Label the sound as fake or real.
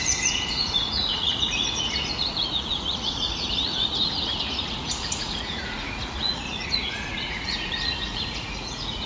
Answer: fake